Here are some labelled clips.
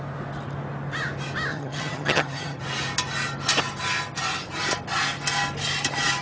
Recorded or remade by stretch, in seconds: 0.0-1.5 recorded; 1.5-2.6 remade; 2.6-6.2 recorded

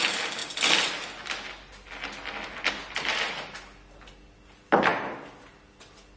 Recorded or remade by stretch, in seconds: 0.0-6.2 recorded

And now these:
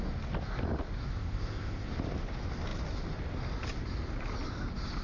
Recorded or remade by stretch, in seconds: 0.0-1.1 recorded; 1.1-1.9 remade; 1.9-5.0 recorded

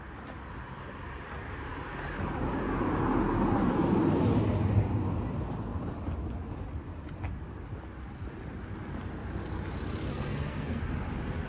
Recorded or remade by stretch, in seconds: 0.0-10.1 recorded; 10.1-10.8 remade; 10.8-11.5 recorded

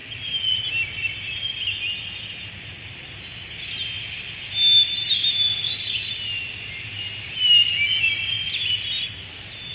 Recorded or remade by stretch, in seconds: 0.0-9.7 recorded